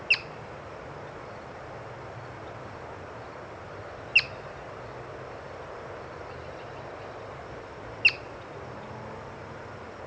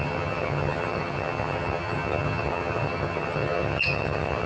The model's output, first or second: second